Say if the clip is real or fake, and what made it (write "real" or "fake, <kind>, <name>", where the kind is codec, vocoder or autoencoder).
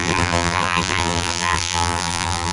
fake, vocoder, BigVGAN v2